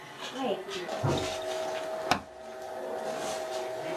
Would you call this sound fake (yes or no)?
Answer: no